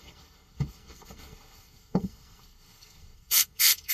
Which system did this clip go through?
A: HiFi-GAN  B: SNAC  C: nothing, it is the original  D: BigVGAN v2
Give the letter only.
B